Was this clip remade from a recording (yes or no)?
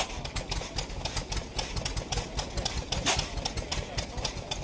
no